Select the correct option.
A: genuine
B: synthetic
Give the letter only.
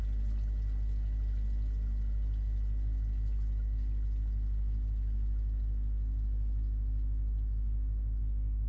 A